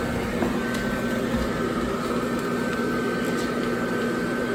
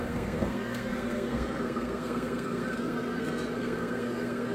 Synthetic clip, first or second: second